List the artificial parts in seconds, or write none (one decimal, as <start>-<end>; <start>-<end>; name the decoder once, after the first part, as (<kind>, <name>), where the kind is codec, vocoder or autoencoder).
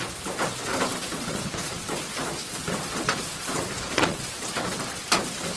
1.0-4.4 (vocoder, Vocos)